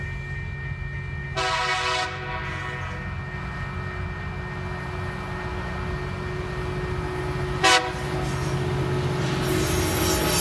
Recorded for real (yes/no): yes